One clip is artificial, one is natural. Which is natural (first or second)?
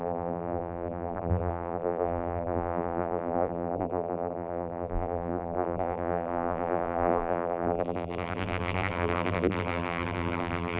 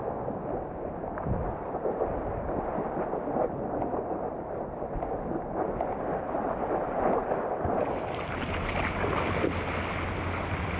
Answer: second